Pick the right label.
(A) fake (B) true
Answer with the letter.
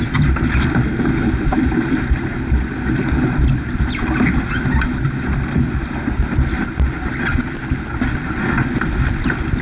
B